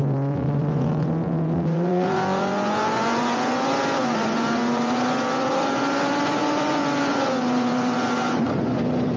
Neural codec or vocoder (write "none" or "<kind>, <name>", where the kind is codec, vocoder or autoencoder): vocoder, Vocos